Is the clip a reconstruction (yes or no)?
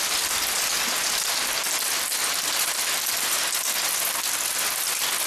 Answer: yes